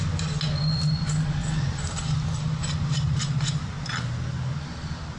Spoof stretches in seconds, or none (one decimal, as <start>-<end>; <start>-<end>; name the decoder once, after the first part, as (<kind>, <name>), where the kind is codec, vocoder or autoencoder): none